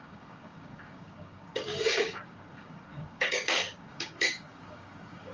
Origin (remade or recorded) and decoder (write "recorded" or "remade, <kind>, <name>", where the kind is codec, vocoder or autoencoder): remade, codec, DAC